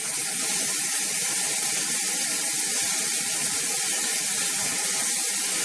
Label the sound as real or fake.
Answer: real